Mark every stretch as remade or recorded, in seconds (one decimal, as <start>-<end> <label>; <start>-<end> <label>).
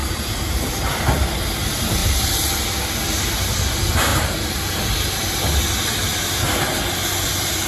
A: 0.0-0.7 remade; 0.7-2.0 recorded; 2.0-2.5 remade; 2.5-4.1 recorded; 4.1-4.7 remade; 4.7-7.7 recorded